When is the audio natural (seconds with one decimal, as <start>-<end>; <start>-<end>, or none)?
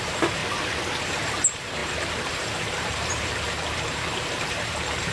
0.4-1.0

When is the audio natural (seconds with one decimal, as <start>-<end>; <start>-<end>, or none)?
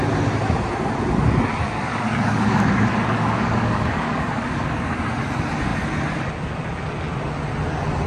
0.0-1.6; 4.8-8.1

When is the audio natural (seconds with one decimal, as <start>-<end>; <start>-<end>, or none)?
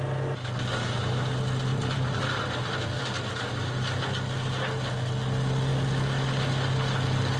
0.0-1.7; 3.0-7.4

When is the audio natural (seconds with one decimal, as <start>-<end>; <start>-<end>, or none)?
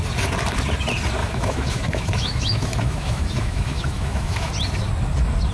0.0-1.2; 4.5-5.5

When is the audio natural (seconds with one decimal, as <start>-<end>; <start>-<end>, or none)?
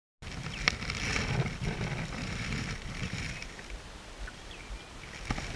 0.0-1.1; 4.2-5.6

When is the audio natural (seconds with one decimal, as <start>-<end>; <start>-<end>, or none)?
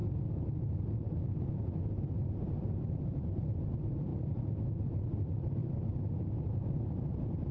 none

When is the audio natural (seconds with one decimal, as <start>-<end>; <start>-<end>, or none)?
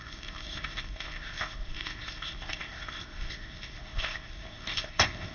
none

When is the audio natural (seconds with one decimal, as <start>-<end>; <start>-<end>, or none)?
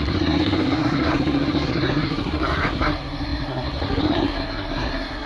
none